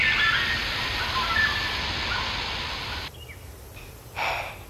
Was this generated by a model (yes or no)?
no